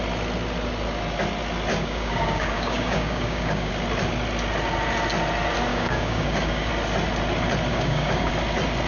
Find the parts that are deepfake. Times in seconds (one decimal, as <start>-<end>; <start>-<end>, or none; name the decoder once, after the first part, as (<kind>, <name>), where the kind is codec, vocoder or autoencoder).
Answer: 1.7-3.7 (codec, DAC); 5.7-6.7; 7.7-8.3